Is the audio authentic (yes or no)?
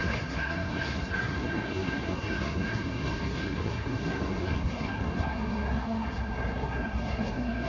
no